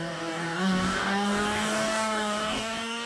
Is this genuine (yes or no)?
no